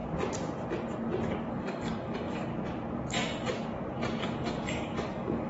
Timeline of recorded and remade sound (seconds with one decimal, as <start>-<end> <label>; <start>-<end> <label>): 0.0-1.5 recorded; 1.5-2.5 remade; 2.5-4.2 recorded; 4.2-5.5 remade